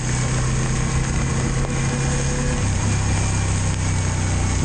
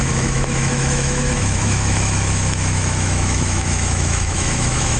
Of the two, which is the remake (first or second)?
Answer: second